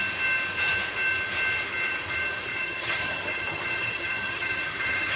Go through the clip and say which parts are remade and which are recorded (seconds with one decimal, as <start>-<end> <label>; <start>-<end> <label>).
0.0-2.5 recorded; 2.5-5.2 remade